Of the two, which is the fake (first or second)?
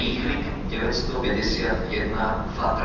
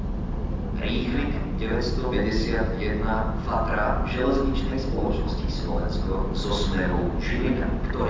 first